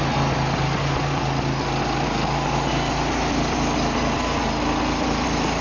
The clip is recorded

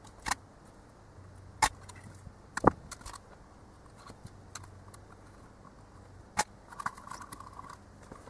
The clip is recorded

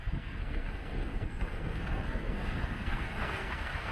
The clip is remade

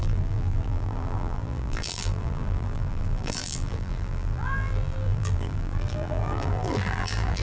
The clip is remade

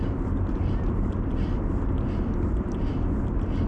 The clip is remade